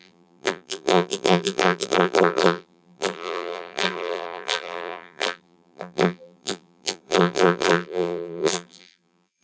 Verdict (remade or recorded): remade